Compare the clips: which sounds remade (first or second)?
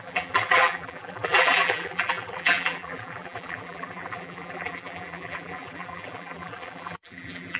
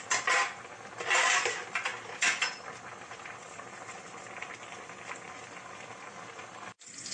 first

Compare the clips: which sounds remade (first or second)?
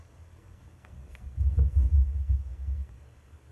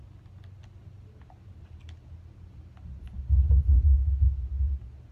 first